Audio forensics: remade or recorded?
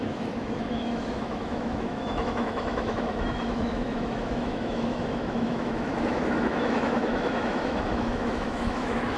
remade